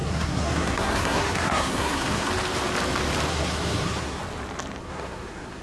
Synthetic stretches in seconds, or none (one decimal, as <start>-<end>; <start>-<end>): 0.0-2.3; 3.3-4.2; 4.8-5.6